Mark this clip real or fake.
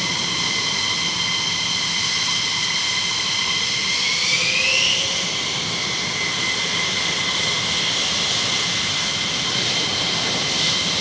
real